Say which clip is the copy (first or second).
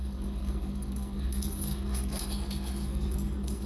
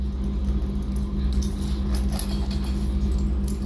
first